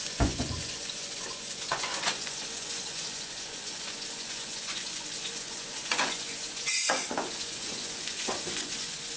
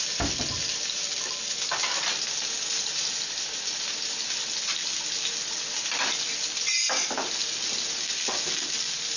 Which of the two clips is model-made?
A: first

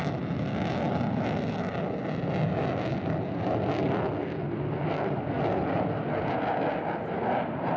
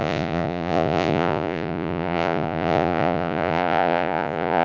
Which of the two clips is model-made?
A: second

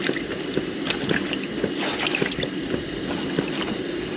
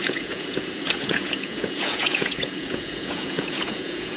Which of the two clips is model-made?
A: second